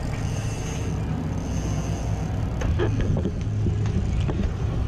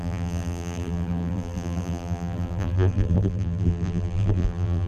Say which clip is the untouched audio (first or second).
first